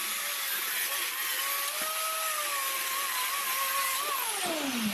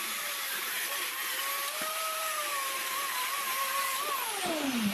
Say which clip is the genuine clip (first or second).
first